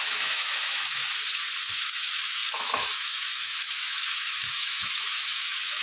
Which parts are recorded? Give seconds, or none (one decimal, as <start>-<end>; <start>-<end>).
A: 1.0-1.7